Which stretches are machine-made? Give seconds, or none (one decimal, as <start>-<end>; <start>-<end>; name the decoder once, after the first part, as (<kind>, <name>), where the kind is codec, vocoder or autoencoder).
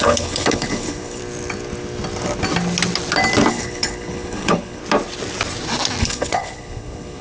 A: 0.0-1.2 (codec, HILCodec); 3.5-4.8; 6.0-7.2